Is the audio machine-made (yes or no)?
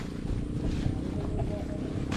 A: no